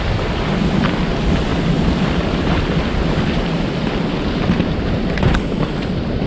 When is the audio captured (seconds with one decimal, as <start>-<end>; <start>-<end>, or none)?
0.0-6.3

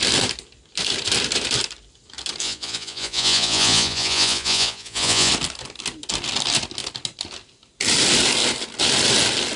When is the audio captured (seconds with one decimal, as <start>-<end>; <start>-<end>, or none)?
0.0-2.4; 5.3-9.6

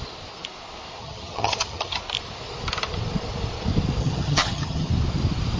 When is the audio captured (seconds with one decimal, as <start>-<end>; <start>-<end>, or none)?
0.0-1.0; 2.0-4.0; 4.9-5.6

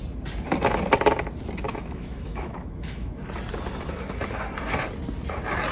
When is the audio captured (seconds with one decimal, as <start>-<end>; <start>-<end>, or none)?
0.0-1.7; 3.2-5.7

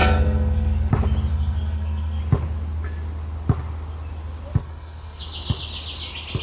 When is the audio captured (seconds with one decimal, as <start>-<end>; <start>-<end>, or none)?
0.9-1.3; 2.2-4.6; 5.2-6.4

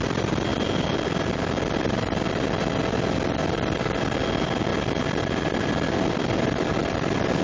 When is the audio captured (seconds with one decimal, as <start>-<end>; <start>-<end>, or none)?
0.0-7.4

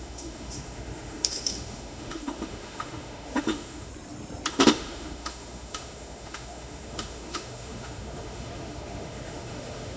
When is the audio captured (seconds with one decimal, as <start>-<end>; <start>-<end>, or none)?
3.9-4.5